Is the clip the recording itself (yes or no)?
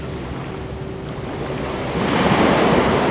yes